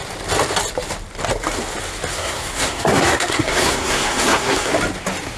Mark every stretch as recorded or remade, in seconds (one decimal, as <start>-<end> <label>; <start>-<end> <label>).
0.0-2.1 recorded; 2.1-4.7 remade; 4.7-5.4 recorded